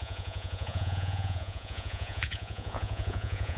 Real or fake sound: fake